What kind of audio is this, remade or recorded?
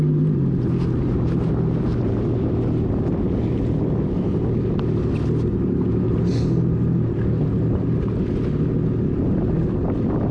recorded